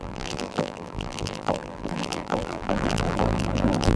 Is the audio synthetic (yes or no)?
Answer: yes